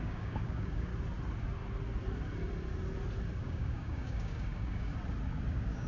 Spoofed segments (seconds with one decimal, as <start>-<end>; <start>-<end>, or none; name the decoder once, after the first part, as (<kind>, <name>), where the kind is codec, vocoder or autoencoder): 0.0-0.9 (codec, DAC); 3.4-4.9; 5.5-5.9